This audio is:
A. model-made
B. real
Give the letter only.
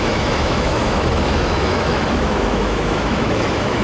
A